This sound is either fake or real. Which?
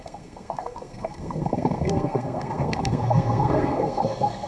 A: fake